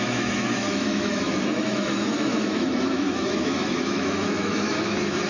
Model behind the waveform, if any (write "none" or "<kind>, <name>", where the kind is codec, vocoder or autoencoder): autoencoder, DAC-VAE